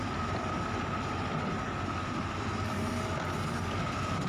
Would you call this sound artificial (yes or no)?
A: no